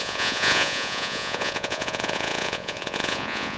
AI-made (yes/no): yes